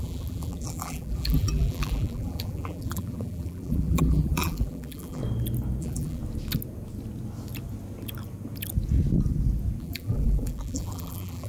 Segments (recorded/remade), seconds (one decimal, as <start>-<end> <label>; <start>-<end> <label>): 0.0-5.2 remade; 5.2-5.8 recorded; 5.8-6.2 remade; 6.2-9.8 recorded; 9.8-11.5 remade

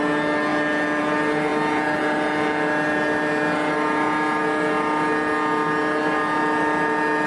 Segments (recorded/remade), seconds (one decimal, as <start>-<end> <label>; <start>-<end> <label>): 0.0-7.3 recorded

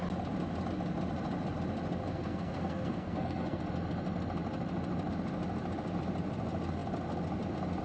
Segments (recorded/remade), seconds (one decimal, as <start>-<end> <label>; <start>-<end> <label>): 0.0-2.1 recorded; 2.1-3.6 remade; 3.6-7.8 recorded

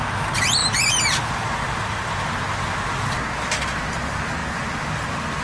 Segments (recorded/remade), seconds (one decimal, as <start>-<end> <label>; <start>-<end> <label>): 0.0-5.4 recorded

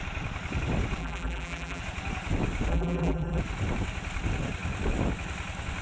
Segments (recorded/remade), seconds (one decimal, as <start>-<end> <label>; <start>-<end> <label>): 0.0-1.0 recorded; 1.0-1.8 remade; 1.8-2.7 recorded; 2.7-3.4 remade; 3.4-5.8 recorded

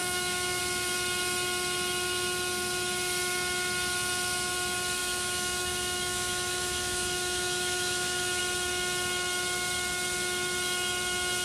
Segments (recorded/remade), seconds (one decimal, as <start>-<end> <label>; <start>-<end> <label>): 0.0-0.6 remade; 0.6-5.0 recorded; 5.0-8.4 remade; 8.4-11.4 recorded

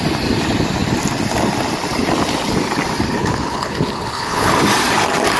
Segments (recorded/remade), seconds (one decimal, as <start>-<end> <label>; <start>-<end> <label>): 0.0-3.2 recorded; 3.2-4.5 remade; 4.5-5.4 recorded